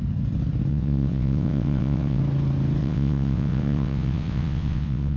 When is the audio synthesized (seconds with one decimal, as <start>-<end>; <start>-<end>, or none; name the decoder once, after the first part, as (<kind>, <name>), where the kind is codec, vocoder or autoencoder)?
0.7-2.2 (vocoder, WaveNeXt); 2.8-5.2